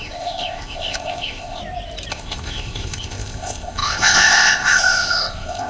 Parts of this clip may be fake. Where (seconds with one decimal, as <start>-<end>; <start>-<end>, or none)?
0.0-1.6; 2.1-5.7